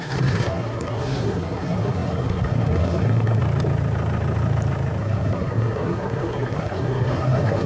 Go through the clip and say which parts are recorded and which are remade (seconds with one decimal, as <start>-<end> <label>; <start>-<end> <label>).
0.0-3.4 remade; 3.4-5.0 recorded; 5.0-7.7 remade